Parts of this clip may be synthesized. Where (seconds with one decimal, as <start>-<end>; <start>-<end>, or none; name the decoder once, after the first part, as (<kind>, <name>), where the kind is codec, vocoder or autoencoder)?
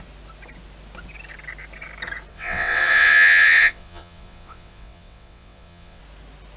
2.3-6.0 (vocoder, WaveNeXt)